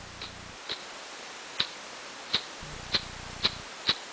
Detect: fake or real real